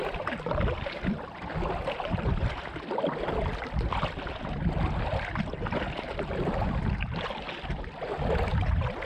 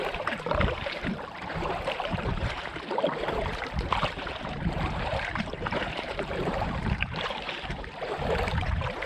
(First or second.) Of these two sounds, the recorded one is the first